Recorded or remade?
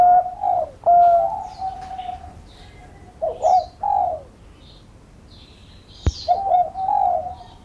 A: recorded